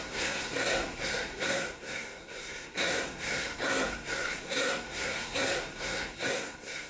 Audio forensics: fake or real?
fake